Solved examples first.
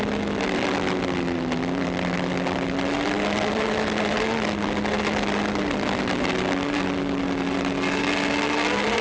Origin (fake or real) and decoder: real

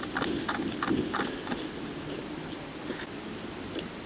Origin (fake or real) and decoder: real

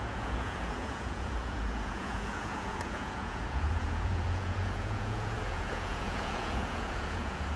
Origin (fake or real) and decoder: fake, vocoder, Vocos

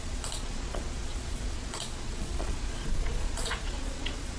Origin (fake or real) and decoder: fake, vocoder, Vocos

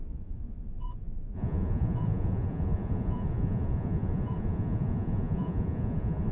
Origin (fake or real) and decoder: fake, vocoder, Vocos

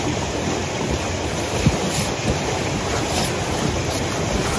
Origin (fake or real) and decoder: real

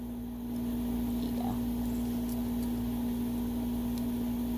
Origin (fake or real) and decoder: real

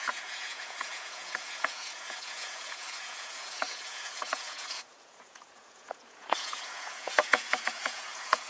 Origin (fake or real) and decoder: fake, vocoder, Vocos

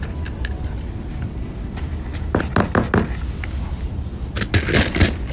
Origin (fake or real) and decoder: real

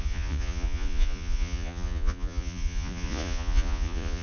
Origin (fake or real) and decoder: fake, vocoder, Vocos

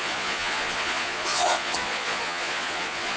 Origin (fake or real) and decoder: fake, vocoder, Vocos